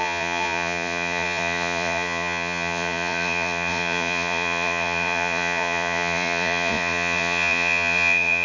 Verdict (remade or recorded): remade